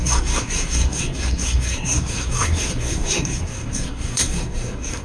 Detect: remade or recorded remade